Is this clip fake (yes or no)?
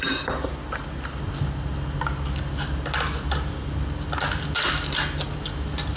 no